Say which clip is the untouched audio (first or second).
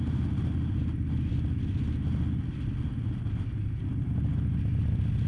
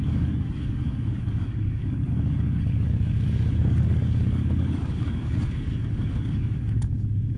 first